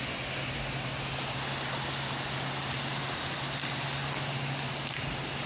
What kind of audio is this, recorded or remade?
recorded